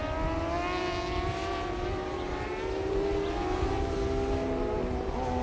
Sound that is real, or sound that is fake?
real